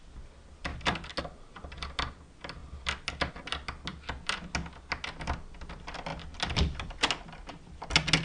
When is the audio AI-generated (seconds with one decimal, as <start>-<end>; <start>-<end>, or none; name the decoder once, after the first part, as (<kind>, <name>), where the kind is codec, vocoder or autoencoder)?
none